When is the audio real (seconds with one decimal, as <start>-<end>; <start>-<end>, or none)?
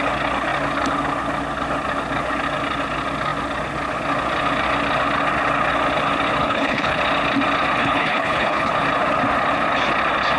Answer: 0.0-6.4; 7.0-7.8; 8.7-10.4